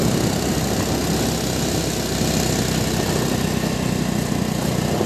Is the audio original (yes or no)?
yes